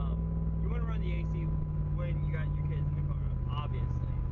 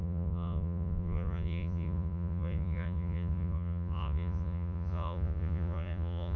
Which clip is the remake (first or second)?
second